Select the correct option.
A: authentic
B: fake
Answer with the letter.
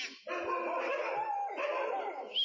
A